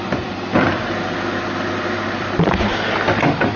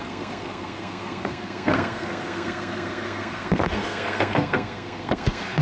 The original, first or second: first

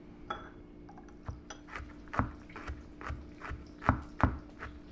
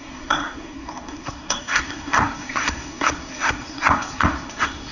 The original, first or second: first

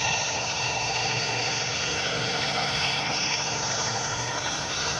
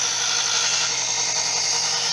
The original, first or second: second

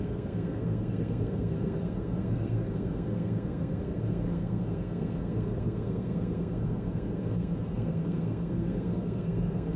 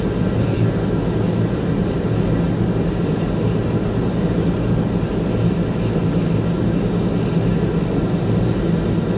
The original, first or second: second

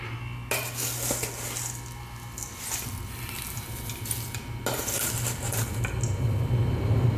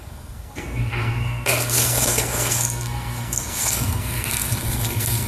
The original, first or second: first